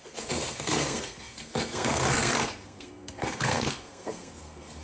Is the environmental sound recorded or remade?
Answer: remade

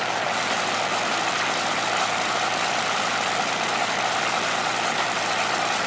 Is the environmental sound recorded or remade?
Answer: recorded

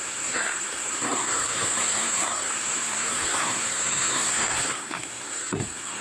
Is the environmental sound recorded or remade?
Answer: remade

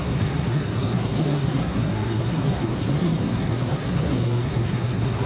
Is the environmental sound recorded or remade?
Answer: remade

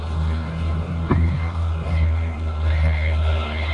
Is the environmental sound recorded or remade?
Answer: remade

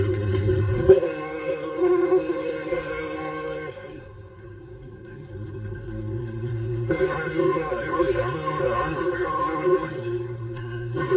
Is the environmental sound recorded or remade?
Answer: remade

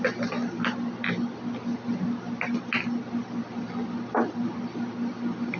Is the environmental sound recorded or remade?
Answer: recorded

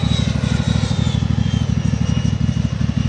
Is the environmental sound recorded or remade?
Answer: recorded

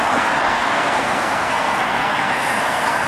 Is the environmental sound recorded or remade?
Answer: remade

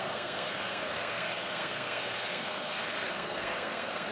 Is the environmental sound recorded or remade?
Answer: remade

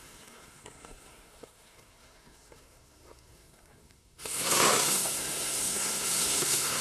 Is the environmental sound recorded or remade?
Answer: remade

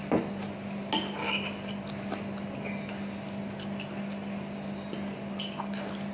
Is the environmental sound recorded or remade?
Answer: recorded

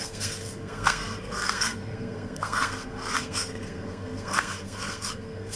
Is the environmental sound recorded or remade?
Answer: remade